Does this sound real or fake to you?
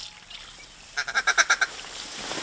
real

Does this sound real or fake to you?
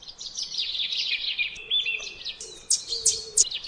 real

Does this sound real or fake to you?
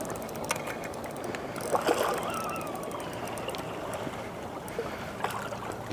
real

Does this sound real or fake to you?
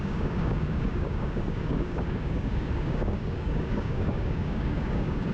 fake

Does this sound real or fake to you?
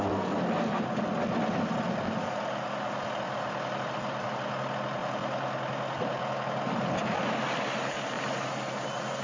real